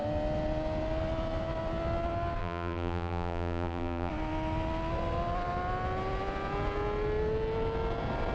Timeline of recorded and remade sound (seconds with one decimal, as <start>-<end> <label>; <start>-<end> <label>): 0.0-2.4 recorded; 2.4-4.1 remade; 4.1-8.3 recorded